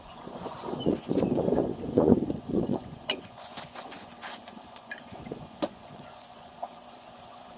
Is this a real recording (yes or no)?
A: no